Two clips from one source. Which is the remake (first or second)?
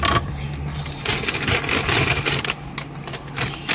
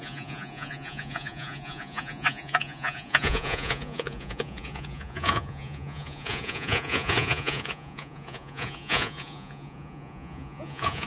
second